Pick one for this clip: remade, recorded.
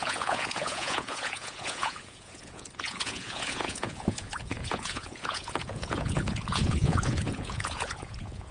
remade